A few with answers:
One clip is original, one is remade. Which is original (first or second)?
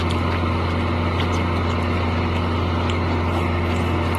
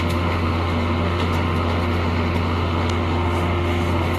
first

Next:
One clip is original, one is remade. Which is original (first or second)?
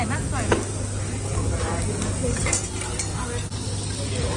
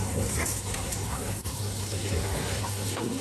first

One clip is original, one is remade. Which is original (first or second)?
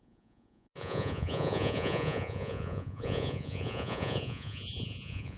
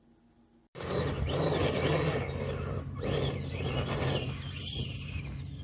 second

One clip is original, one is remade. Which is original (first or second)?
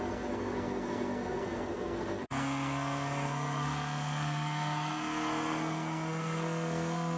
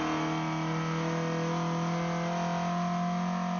second